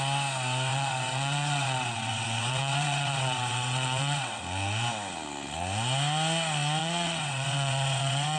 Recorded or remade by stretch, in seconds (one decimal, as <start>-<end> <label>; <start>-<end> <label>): 0.0-0.7 recorded; 0.7-4.4 remade; 4.4-6.8 recorded; 6.8-8.4 remade